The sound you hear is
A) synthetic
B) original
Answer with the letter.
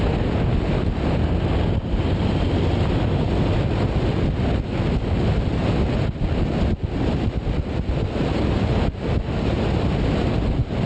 B